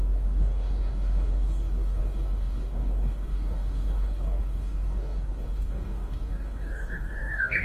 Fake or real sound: fake